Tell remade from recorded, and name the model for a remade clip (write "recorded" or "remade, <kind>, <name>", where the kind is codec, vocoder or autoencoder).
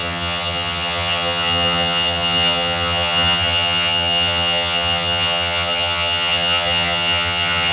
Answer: remade, vocoder, HiFi-GAN